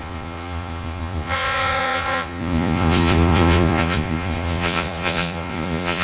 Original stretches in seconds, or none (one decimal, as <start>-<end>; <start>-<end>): none